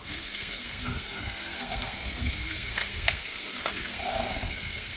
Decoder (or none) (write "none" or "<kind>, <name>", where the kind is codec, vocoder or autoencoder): codec, SNAC